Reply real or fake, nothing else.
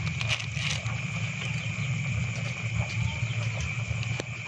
real